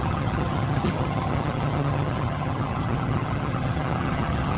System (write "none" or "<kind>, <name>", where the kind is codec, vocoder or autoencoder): vocoder, HiFi-GAN